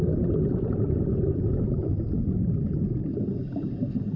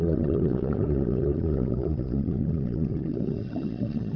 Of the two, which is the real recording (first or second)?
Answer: first